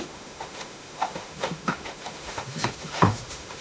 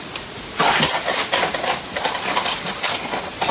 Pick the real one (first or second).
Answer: second